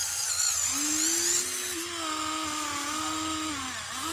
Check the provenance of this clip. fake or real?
real